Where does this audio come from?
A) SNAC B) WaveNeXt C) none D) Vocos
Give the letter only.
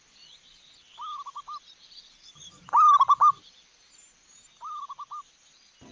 C